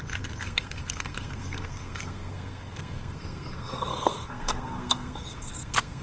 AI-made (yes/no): yes